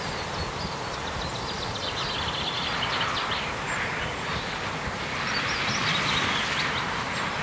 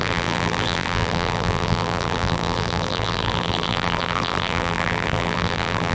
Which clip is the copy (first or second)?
second